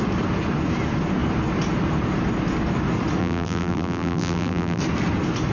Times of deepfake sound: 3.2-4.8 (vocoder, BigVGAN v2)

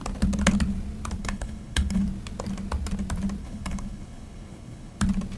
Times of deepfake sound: 1.2-2.0 (codec, HILCodec); 3.4-5.0

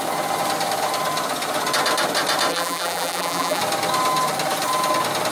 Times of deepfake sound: 2.5-3.6 (vocoder, BigVGAN v2)